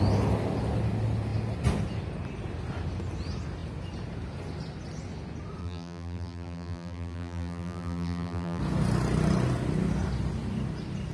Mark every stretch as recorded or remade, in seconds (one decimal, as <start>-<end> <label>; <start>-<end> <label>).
0.0-5.6 recorded; 5.6-8.6 remade; 8.6-11.1 recorded